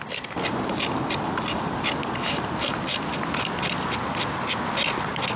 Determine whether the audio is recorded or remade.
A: recorded